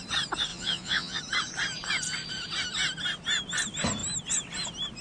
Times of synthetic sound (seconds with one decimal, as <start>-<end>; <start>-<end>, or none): 0.5-1.2